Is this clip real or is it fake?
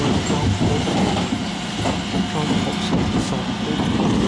real